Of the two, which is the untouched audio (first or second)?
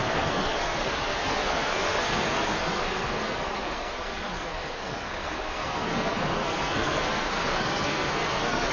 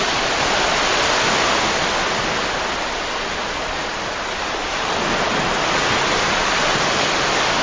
second